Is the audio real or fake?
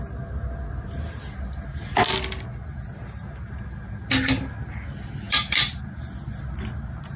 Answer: real